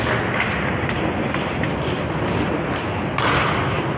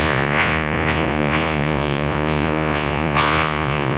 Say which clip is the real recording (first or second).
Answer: first